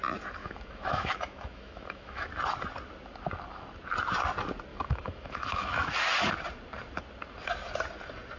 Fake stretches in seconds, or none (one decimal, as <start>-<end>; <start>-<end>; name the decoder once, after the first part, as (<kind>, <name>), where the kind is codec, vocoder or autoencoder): 0.4-2.3 (autoencoder, DAC-VAE); 4.7-5.9